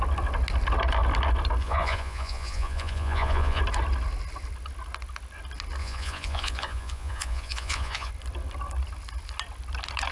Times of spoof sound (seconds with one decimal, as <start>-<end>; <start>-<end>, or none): 1.6-3.6; 5.8-8.1